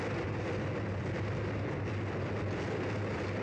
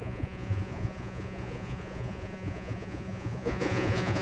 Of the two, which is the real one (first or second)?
first